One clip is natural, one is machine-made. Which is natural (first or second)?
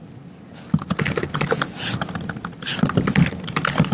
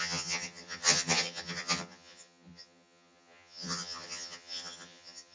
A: first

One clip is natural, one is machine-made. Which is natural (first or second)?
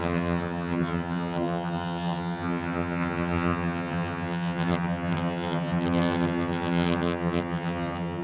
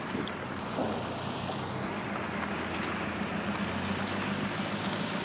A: second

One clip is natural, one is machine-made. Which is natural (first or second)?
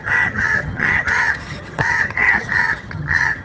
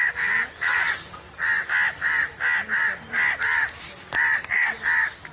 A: second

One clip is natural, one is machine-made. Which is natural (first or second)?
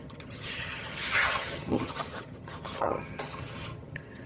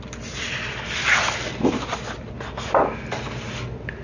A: second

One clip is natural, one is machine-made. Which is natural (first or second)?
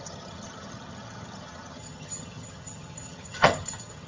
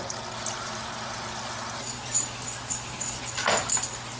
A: second